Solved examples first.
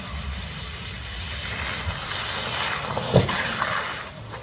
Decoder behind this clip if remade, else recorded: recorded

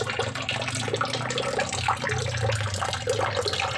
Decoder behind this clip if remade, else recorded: recorded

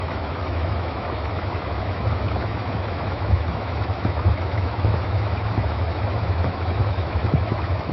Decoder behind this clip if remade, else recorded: remade, autoencoder, DAC-VAE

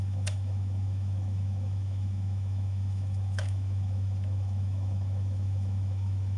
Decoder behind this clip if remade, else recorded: remade, autoencoder, DAC-VAE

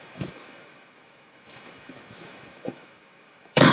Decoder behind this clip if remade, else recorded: remade, autoencoder, DAC-VAE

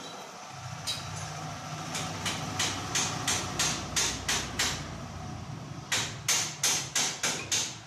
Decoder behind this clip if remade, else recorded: recorded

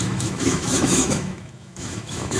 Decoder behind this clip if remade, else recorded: remade, autoencoder, DAC-VAE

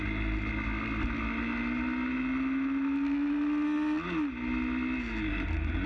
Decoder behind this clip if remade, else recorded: recorded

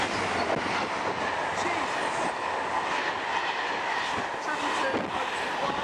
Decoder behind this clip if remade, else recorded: recorded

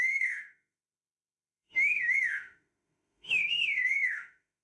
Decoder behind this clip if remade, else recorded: remade, autoencoder, DAC-VAE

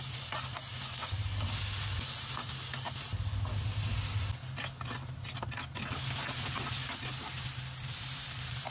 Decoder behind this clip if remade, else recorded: recorded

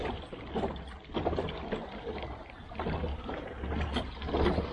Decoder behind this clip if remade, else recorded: recorded